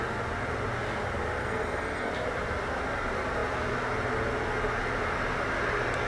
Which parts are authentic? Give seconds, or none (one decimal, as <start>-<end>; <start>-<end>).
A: 0.0-1.4; 2.1-6.1